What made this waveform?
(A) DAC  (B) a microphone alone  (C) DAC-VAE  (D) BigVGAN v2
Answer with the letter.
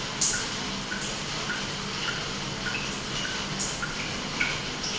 B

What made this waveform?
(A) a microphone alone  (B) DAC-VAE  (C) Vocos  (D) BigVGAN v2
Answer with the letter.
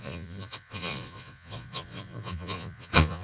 C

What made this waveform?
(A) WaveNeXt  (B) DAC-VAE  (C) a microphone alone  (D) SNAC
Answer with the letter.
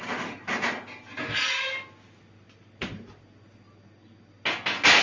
C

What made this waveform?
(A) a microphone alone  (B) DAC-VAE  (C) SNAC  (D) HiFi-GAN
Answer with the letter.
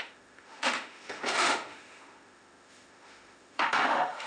B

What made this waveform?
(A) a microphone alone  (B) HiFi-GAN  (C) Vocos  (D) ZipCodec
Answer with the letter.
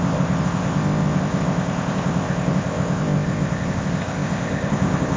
D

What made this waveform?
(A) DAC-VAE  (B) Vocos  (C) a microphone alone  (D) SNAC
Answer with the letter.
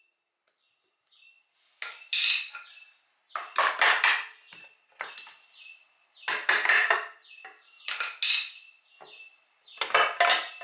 C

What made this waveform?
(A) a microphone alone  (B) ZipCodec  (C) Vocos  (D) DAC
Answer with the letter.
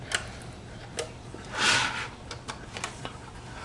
A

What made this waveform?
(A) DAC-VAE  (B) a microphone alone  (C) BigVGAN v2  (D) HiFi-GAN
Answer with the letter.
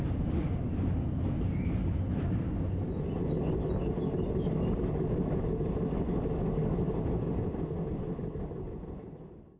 B